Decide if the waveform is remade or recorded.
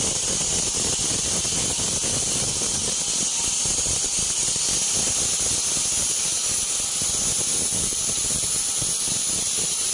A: recorded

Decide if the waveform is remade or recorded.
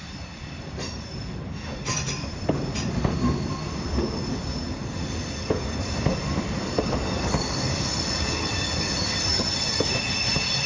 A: recorded